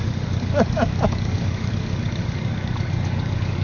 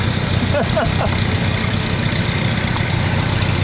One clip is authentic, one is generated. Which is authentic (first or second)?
second